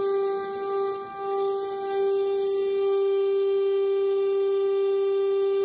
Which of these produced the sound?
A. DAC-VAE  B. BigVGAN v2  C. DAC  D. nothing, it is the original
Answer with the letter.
D